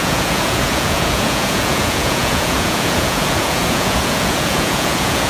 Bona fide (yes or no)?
no